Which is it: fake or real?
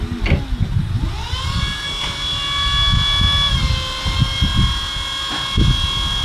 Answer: real